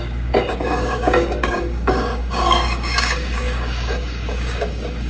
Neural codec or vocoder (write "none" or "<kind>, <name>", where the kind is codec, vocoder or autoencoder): codec, DAC